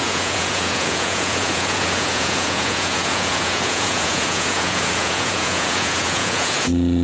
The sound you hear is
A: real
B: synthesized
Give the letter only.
B